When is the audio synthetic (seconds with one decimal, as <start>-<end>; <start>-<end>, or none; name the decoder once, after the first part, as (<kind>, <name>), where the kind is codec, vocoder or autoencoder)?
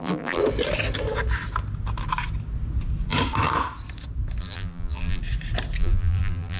0.0-0.4 (vocoder, BigVGAN v2); 4.4-5.2; 5.8-6.6